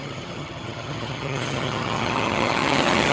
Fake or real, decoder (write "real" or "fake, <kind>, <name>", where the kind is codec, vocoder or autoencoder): fake, vocoder, HiFi-GAN